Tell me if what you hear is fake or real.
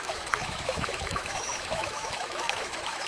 fake